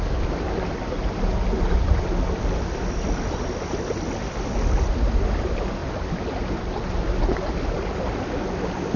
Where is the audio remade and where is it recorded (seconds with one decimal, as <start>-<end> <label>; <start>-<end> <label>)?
0.0-9.0 recorded